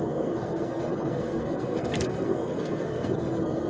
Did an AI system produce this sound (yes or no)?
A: yes